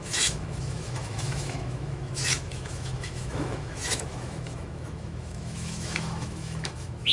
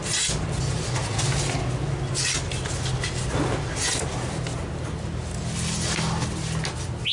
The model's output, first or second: first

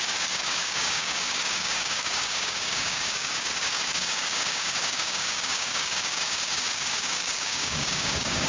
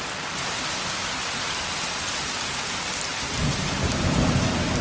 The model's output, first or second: first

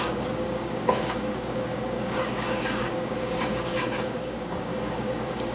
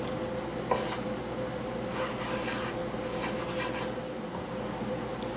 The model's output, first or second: first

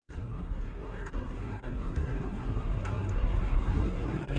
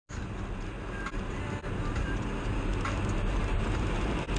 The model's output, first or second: first